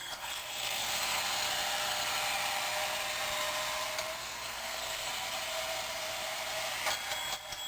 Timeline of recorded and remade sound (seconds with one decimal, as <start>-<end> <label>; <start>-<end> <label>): 0.0-1.2 remade; 1.2-4.2 recorded; 4.2-5.1 remade; 5.1-7.7 recorded